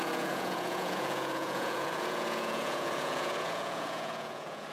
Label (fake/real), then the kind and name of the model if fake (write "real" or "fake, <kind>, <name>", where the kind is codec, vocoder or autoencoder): fake, vocoder, Vocos